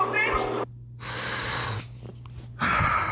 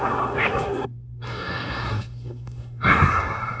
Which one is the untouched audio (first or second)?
first